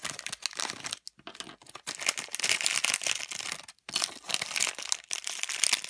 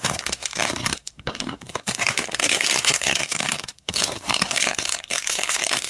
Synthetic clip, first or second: second